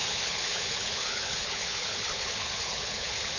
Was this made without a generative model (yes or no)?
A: no